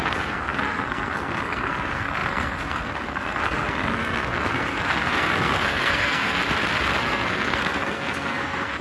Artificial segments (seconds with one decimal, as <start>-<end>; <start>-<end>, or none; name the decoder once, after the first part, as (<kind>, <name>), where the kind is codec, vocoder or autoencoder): 0.0-6.4 (codec, SNAC); 7.0-8.8